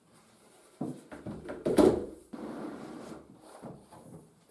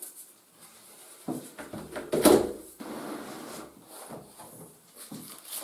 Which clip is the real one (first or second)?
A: second